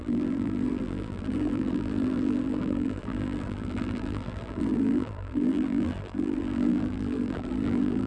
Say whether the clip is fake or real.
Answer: fake